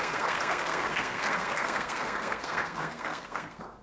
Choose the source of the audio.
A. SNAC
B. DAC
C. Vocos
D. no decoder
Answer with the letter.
A